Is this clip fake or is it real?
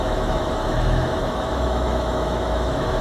fake